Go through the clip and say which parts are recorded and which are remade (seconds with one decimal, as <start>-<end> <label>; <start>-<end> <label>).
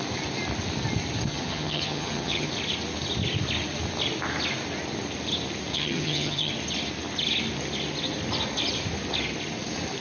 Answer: 0.0-1.3 recorded; 1.3-2.5 remade; 2.5-5.7 recorded; 5.7-6.5 remade; 6.5-10.0 recorded